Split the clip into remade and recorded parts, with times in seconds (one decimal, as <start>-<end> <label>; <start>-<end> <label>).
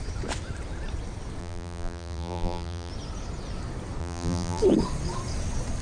0.0-1.4 recorded; 1.4-2.9 remade; 2.9-4.0 recorded; 4.0-4.6 remade; 4.6-5.8 recorded